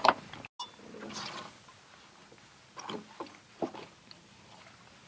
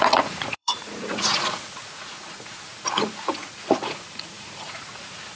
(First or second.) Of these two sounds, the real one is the first